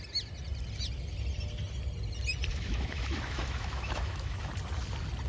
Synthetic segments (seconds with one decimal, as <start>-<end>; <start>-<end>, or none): 2.5-4.5